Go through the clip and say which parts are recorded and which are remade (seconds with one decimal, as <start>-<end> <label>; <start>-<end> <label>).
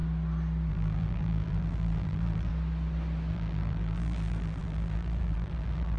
0.0-0.7 recorded; 0.7-2.5 remade; 2.5-3.3 recorded; 3.3-6.0 remade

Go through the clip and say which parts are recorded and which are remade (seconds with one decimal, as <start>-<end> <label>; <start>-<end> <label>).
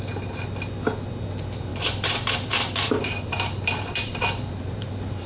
0.0-1.7 recorded; 1.7-5.3 remade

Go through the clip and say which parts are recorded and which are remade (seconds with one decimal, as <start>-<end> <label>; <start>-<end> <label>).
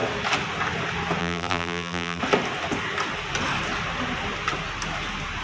0.0-1.2 recorded; 1.2-2.2 remade; 2.2-5.4 recorded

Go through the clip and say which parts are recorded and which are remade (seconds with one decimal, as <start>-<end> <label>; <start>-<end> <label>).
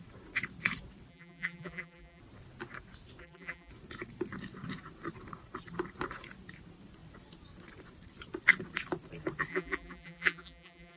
0.0-1.1 recorded; 1.1-2.2 remade; 2.2-3.2 recorded; 3.2-3.7 remade; 3.7-9.5 recorded; 9.5-11.0 remade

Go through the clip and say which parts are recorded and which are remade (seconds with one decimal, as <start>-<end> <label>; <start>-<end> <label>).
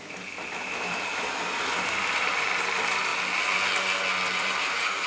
0.0-3.1 remade; 3.1-4.4 recorded; 4.4-5.1 remade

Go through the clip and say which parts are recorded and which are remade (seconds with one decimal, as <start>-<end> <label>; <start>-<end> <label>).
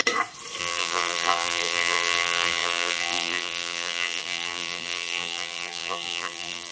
0.0-0.6 recorded; 0.6-6.7 remade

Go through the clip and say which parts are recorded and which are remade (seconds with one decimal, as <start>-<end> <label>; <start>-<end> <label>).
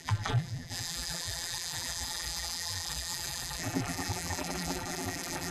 0.0-5.5 remade